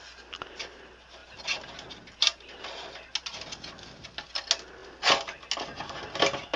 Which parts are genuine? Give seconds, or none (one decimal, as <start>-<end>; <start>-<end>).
0.0-6.6